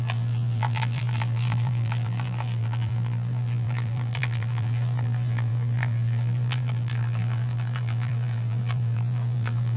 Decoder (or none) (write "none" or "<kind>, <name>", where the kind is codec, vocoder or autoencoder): vocoder, BigVGAN v2